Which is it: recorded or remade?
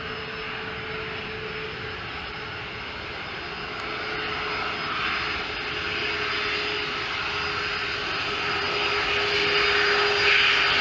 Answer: recorded